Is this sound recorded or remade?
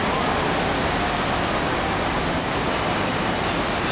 recorded